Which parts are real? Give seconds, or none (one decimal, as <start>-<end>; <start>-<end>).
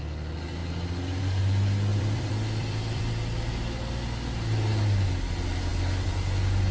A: 0.0-1.9; 3.1-6.7